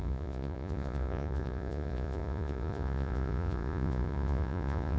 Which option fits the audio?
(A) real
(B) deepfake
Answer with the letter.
B